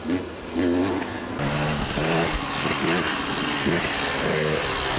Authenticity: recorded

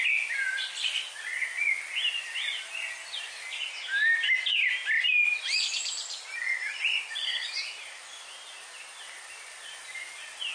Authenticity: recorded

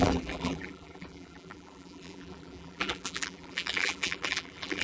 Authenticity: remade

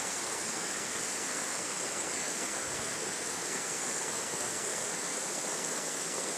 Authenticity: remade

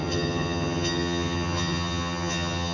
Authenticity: remade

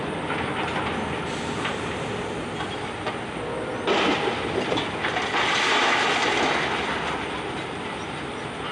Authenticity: recorded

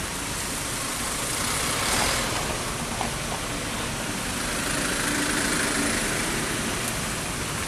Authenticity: recorded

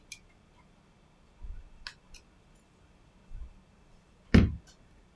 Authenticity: recorded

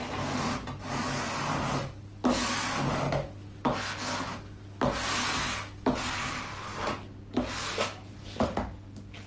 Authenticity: recorded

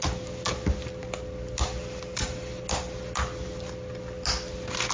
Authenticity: recorded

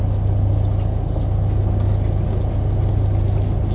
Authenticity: recorded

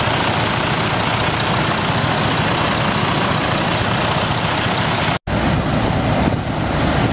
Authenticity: recorded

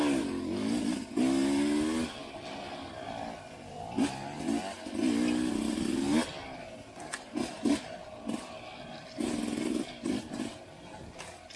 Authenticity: recorded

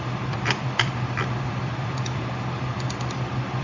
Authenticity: remade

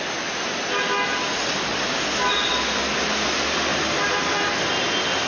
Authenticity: recorded